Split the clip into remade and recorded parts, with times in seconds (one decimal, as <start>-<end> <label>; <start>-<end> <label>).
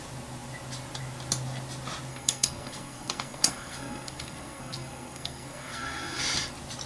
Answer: 0.0-2.1 recorded; 2.1-6.2 remade; 6.2-6.9 recorded